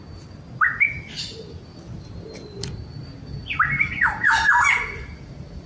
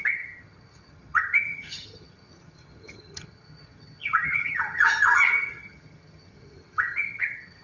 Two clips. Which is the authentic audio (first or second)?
first